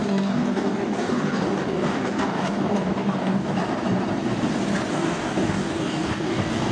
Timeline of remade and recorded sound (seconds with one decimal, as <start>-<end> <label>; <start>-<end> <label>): 0.0-3.6 remade; 3.6-4.9 recorded; 4.9-6.7 remade